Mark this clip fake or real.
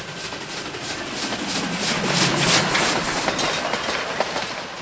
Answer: real